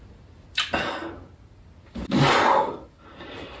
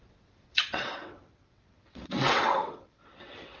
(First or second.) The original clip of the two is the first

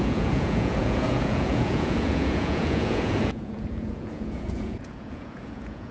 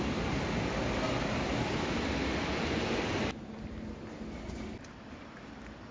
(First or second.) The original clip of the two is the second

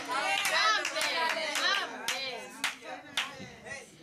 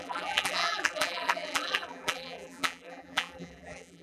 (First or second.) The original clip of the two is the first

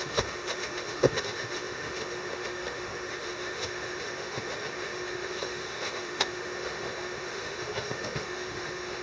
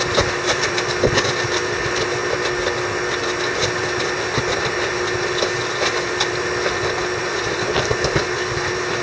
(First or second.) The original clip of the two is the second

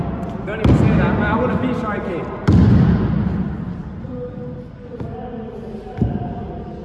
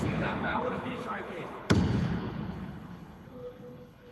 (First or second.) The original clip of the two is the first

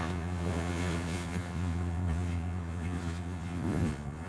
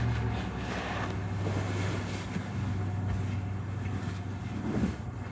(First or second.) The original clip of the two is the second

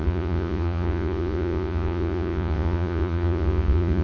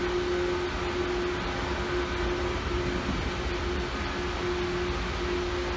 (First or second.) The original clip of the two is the second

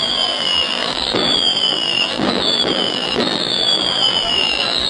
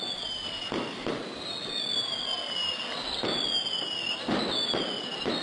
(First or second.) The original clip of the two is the second